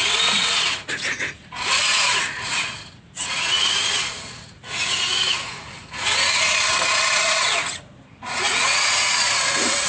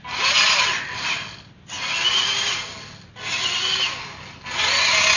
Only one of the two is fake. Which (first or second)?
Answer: first